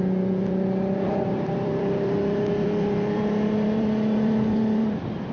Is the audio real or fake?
fake